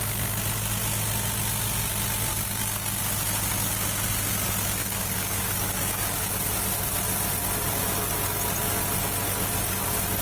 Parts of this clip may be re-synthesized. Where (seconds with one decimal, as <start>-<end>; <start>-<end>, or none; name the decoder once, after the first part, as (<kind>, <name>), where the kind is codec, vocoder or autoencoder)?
2.3-3.0 (codec, DAC); 4.8-6.3

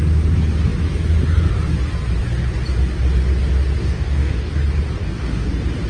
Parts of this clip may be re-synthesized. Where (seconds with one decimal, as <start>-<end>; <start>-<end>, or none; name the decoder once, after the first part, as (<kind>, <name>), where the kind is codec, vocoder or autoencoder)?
3.8-4.5 (codec, DAC); 5.0-5.5